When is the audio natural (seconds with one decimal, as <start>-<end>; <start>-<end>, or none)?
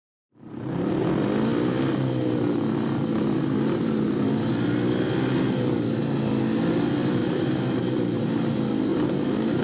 1.0-7.2; 8.3-8.9